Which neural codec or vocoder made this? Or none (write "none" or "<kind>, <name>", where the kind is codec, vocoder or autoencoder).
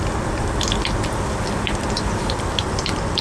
none